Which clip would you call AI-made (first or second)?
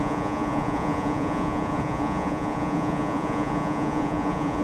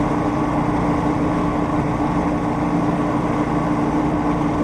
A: first